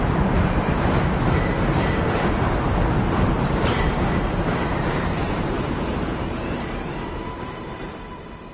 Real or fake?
fake